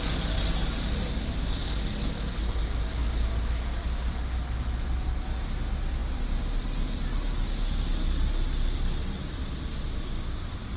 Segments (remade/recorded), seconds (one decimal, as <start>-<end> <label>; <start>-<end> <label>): 0.0-10.8 recorded